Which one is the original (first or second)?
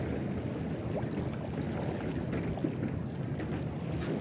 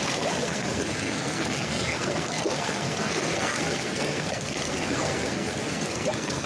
first